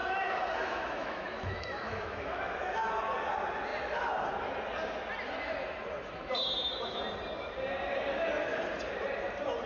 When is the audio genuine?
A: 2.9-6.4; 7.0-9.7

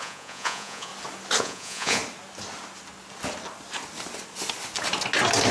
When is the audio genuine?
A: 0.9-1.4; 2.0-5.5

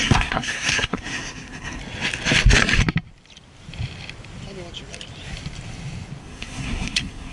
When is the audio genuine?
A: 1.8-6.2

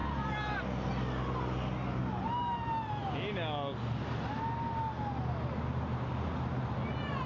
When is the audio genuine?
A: 0.0-7.3